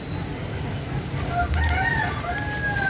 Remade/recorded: recorded